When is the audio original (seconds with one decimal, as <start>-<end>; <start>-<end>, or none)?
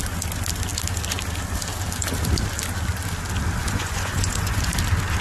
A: 0.0-3.6; 4.7-5.2